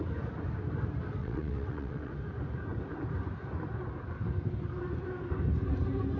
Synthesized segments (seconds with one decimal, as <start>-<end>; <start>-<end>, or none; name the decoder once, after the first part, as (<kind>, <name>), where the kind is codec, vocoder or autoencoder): 1.2-2.1 (vocoder, WaveNeXt)